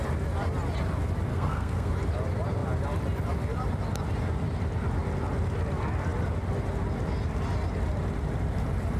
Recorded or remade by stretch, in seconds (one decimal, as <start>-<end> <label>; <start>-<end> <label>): 0.0-1.3 recorded; 1.3-1.9 remade; 1.9-9.0 recorded